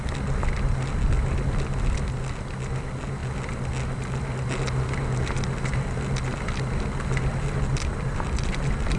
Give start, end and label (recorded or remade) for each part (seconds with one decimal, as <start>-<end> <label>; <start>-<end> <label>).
0.0-9.0 recorded